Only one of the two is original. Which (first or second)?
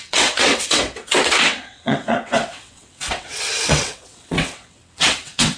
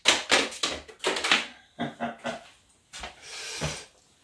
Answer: second